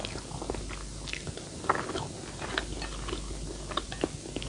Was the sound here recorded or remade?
recorded